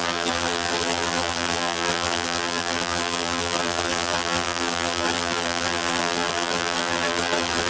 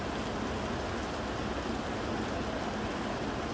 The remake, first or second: first